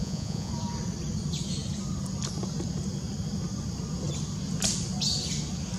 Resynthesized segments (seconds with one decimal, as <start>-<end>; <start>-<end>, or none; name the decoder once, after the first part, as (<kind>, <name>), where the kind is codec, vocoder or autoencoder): 0.0-0.5 (vocoder, Vocos)